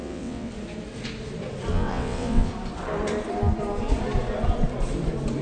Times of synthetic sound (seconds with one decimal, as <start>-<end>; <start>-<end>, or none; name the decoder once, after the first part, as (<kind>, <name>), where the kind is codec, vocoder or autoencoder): 0.0-0.5 (vocoder, WaveNeXt); 1.7-2.5